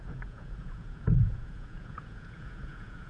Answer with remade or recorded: remade